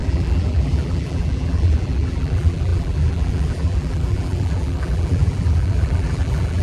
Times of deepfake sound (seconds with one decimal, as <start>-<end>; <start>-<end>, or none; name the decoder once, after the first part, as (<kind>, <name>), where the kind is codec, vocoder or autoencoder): 0.0-6.6 (vocoder, BigVGAN v2)